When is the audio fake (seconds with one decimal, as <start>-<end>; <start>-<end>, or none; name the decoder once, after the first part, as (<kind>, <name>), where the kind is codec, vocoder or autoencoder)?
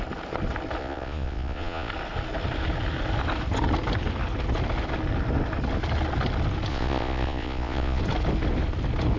0.8-1.9 (vocoder, Vocos); 6.7-8.0